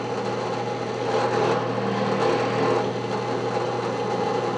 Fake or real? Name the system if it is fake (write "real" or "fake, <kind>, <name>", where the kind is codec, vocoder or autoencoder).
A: real